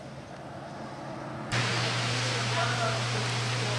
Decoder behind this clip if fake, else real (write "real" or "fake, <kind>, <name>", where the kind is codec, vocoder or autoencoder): real